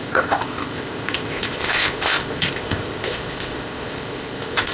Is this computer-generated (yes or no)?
yes